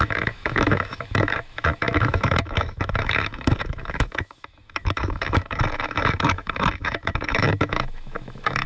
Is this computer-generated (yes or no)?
yes